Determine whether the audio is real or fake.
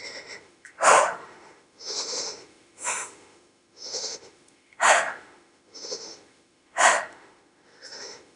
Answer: fake